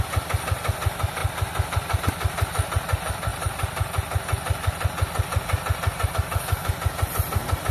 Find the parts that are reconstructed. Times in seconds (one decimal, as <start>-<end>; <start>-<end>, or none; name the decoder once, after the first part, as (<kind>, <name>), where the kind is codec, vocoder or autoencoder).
none